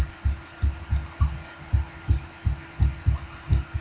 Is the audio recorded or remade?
recorded